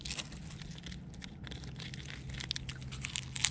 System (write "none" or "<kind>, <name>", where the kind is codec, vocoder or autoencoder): none